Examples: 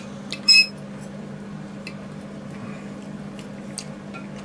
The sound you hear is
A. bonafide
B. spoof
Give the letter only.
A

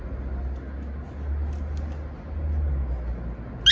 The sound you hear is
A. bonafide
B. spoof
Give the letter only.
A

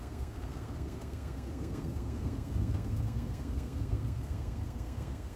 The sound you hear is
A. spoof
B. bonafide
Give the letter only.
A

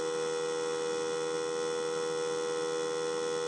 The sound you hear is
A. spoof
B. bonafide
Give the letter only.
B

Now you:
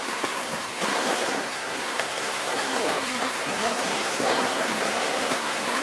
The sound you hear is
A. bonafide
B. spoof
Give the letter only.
B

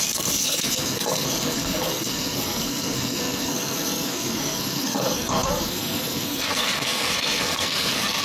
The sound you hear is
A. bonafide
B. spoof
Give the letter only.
B